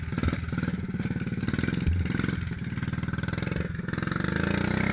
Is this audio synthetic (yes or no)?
no